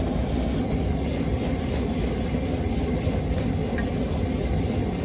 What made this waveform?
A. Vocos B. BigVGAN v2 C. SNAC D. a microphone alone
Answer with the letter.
D